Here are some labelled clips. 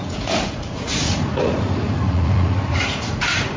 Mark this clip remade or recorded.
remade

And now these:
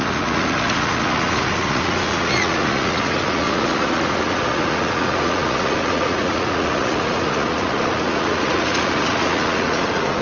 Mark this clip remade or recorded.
remade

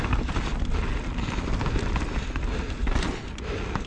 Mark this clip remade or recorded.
recorded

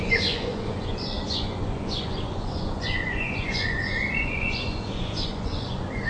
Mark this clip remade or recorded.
remade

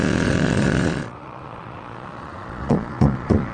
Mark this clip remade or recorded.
remade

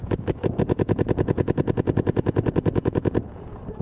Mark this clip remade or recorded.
remade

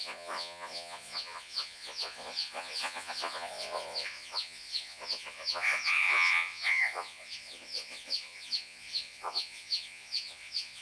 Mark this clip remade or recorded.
remade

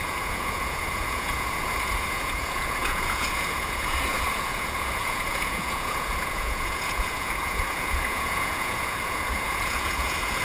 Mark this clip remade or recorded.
remade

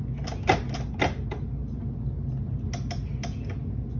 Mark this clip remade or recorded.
recorded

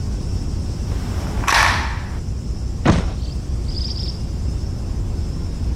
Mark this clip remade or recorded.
recorded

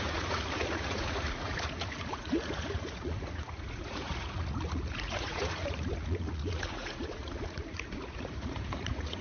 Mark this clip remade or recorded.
remade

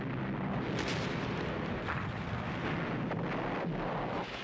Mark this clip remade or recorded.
recorded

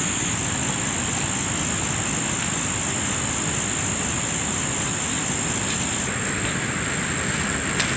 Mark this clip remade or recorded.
recorded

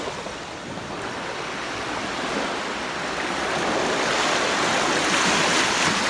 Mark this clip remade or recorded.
recorded